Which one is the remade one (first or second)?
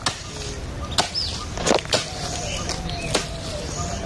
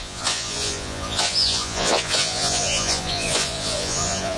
second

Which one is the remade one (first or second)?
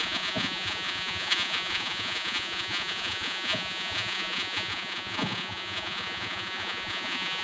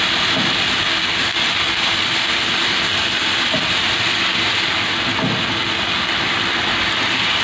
first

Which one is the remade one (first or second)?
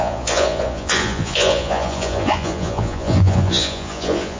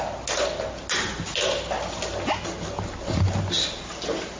first